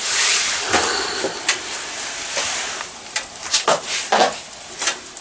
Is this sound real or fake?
real